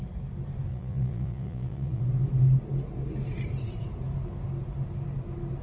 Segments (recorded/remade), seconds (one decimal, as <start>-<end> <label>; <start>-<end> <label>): 0.0-0.7 recorded; 0.7-2.0 remade; 2.0-5.6 recorded